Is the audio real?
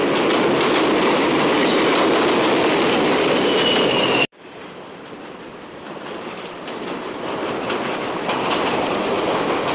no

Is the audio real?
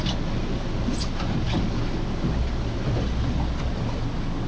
yes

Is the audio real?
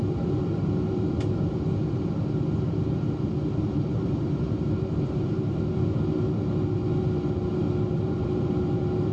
yes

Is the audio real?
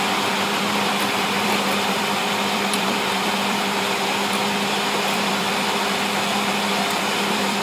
no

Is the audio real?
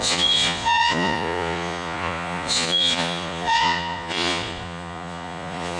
no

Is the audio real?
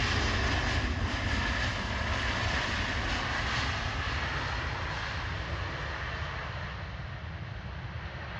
yes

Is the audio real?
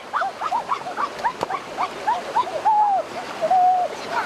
yes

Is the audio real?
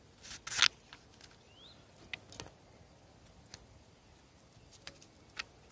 yes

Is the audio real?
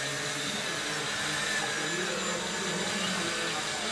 yes